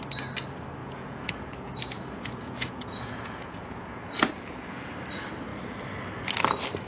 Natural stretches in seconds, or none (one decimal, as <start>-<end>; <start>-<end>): 0.0-0.8; 4.9-6.9